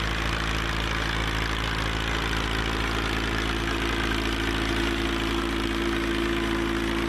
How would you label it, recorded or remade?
recorded